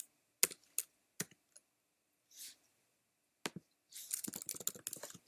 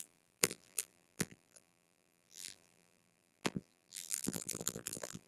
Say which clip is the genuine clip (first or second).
first